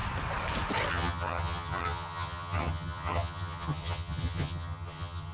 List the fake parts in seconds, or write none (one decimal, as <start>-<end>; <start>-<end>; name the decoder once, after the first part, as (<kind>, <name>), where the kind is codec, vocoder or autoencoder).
0.9-5.3 (vocoder, HiFi-GAN)

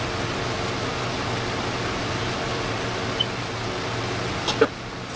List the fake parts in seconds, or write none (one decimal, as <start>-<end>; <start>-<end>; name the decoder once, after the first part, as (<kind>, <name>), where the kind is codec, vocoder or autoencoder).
none